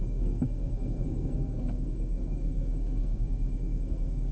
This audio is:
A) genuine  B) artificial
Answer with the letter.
B